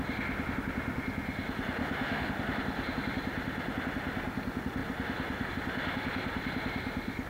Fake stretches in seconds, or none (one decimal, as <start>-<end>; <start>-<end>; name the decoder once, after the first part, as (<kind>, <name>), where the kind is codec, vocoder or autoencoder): 1.8-2.3 (autoencoder, DAC-VAE)